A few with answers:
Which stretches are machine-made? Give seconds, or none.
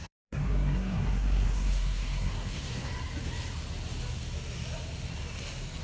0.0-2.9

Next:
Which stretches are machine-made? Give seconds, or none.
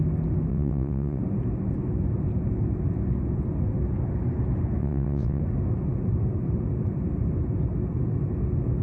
0.5-1.2; 4.8-5.4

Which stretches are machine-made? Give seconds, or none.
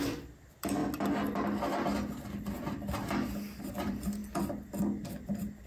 0.0-0.8; 3.6-4.2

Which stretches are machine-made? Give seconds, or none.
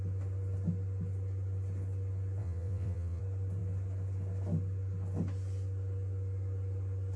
2.4-3.2